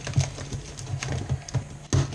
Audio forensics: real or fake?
real